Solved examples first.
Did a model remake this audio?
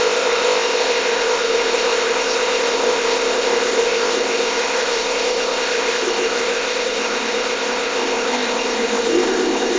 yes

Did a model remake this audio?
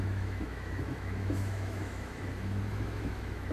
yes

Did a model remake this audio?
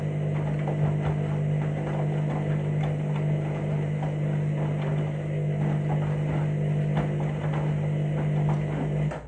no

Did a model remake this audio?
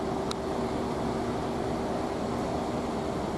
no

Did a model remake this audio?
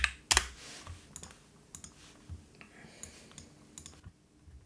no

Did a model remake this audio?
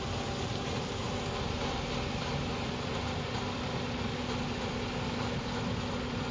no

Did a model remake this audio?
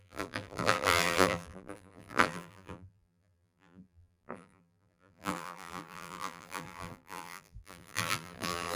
yes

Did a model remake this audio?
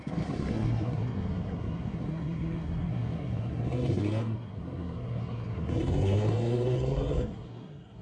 yes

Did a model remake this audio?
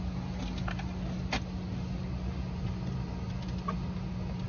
no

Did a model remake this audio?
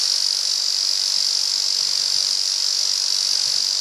no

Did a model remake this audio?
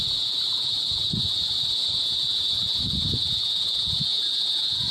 yes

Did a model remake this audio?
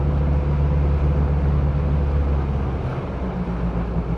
no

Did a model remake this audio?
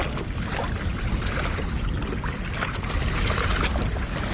no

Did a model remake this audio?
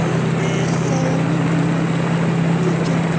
no